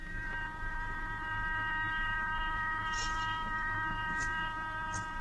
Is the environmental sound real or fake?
real